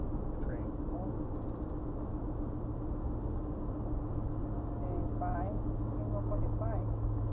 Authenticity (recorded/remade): recorded